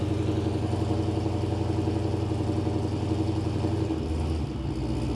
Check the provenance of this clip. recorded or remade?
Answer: recorded